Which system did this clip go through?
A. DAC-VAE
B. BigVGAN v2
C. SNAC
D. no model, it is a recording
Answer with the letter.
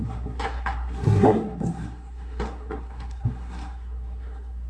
C